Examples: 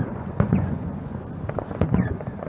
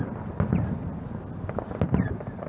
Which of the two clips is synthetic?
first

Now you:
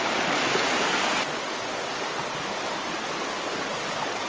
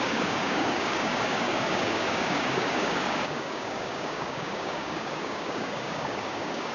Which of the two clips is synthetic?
second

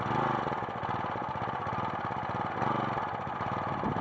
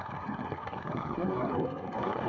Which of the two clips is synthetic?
second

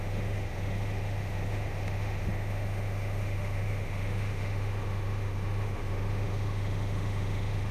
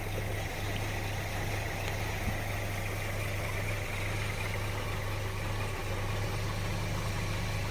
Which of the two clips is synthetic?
first